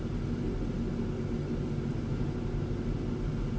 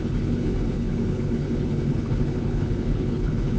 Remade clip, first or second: second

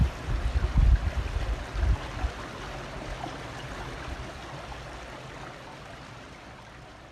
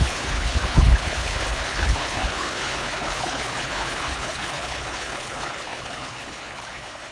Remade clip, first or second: second